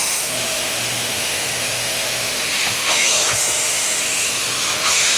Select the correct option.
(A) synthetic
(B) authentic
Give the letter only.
A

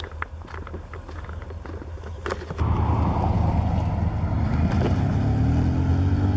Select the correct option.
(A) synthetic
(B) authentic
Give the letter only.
B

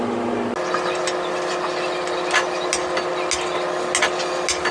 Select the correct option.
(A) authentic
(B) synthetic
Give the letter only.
A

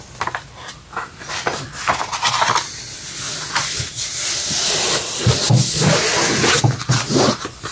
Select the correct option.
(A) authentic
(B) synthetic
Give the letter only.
A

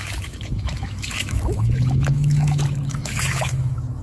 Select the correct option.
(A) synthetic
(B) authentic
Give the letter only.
A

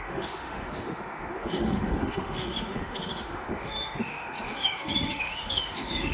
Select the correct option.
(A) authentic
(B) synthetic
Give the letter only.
B